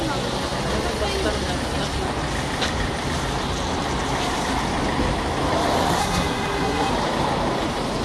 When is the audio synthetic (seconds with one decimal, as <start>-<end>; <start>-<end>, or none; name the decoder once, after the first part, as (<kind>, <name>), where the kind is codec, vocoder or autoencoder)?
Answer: 6.0-6.9 (codec, SNAC)